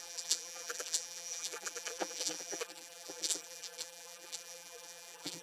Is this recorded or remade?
remade